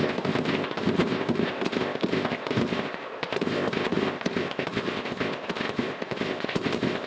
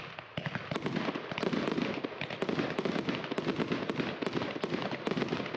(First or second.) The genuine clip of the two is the second